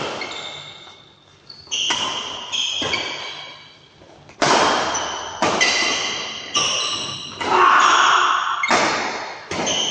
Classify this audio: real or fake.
real